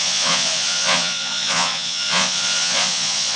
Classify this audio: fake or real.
fake